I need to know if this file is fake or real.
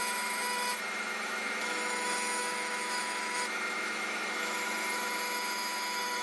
fake